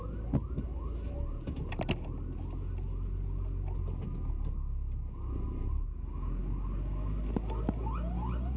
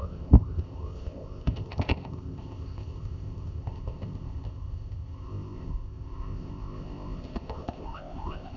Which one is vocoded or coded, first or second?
second